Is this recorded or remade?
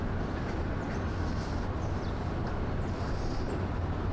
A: recorded